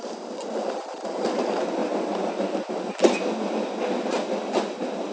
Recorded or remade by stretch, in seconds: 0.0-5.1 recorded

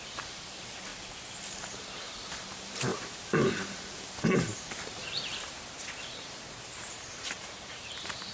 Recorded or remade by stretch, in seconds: 0.0-0.9 remade; 0.9-1.4 recorded; 1.4-2.9 remade; 2.9-3.9 recorded; 3.9-8.3 remade

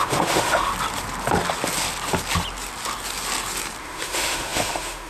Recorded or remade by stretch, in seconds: 0.0-0.7 remade; 0.7-3.8 recorded; 3.8-5.1 remade